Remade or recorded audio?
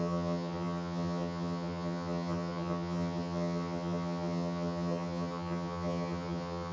remade